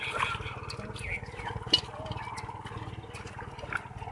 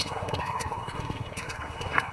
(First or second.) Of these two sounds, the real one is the first